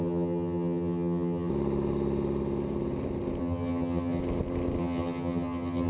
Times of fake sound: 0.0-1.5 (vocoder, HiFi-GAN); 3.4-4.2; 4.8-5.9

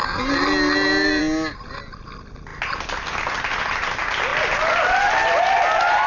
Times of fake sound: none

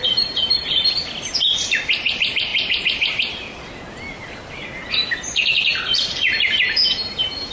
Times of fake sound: none

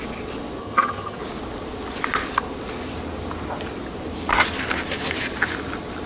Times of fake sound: 0.6-1.2 (vocoder, HiFi-GAN)

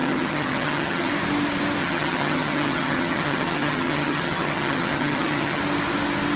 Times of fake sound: 0.0-1.1 (vocoder, HiFi-GAN); 1.8-5.6

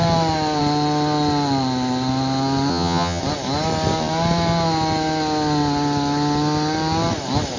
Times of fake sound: 2.7-3.2 (vocoder, HiFi-GAN)